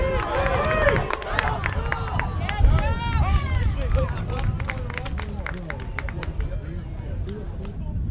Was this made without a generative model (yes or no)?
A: yes